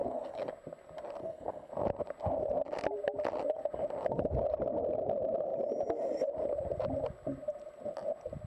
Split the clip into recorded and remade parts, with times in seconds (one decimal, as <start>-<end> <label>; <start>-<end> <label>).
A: 0.0-0.5 remade; 0.5-1.2 recorded; 1.2-1.7 remade; 1.7-8.5 recorded